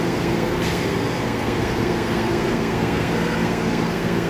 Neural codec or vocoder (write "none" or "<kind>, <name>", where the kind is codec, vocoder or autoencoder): codec, SNAC